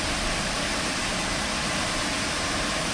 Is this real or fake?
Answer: real